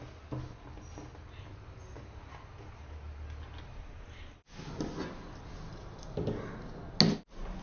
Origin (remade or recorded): recorded